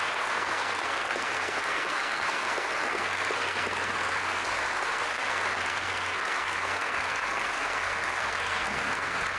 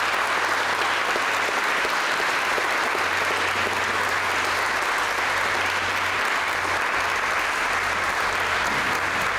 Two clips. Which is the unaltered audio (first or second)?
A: second